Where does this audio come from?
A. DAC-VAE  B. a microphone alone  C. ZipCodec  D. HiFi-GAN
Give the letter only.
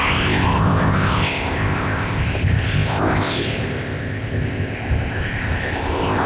C